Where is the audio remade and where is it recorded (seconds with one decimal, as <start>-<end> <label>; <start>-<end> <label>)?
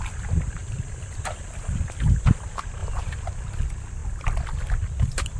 0.0-0.6 recorded; 0.6-1.7 remade; 1.7-2.8 recorded; 2.8-3.6 remade; 3.6-5.4 recorded